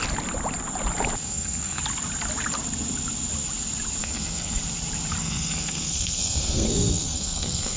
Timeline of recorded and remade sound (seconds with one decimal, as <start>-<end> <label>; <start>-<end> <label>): 0.0-1.2 recorded; 1.2-1.8 remade; 1.8-4.0 recorded; 4.0-4.6 remade; 4.6-5.2 recorded; 5.2-7.8 remade